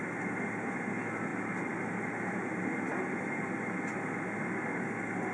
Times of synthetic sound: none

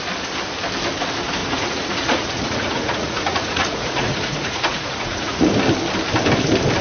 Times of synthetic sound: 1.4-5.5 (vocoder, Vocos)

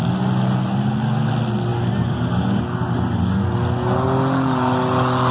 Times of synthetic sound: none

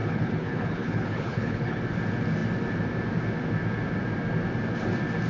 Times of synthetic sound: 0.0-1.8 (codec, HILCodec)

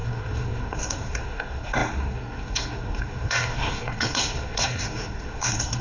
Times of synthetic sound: 0.0-5.8 (codec, SNAC)

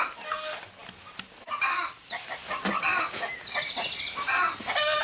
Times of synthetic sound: 0.0-2.9 (vocoder, BigVGAN v2)

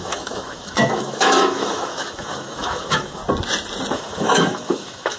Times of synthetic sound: 0.0-3.2 (autoencoder, DAC-VAE); 3.9-5.2